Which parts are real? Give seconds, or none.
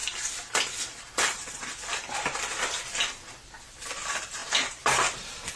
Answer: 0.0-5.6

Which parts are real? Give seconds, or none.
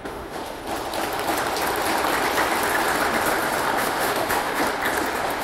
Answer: 0.6-3.8; 4.6-5.4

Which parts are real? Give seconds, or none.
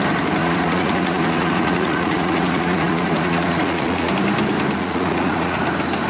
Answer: 0.0-0.4; 4.1-4.8; 5.6-6.1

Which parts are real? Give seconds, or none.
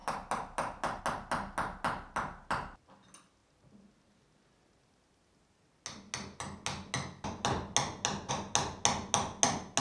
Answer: 0.0-9.8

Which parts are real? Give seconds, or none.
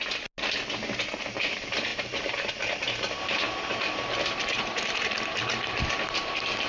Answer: 0.0-1.9; 2.5-4.4; 6.1-6.7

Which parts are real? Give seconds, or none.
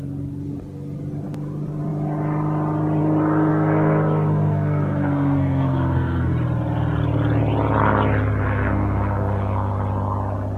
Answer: 0.0-3.5; 6.3-8.4; 9.7-10.6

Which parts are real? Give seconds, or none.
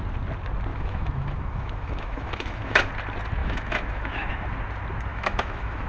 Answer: 0.0-0.7; 2.9-3.4; 4.3-5.1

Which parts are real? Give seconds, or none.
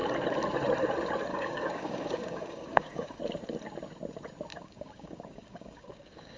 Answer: 0.0-1.3; 3.2-4.5